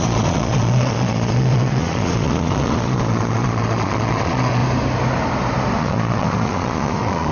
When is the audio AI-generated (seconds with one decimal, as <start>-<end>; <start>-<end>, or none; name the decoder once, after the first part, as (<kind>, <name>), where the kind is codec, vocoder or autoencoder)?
0.0-4.6 (vocoder, Vocos); 5.8-7.3